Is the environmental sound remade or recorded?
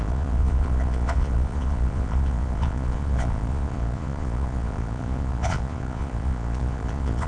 remade